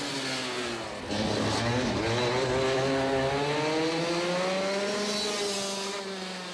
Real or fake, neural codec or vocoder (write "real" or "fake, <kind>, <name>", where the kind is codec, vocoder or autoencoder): real